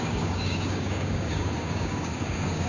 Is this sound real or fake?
fake